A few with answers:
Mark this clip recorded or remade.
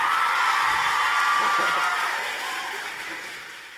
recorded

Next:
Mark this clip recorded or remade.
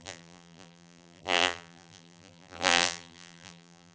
remade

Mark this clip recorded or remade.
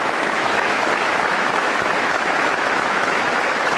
remade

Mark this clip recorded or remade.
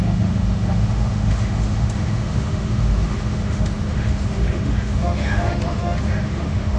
remade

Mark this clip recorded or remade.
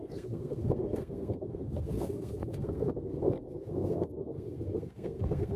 remade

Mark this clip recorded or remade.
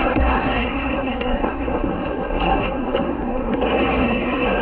remade